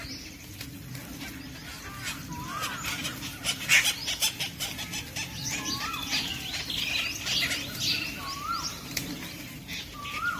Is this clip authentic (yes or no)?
yes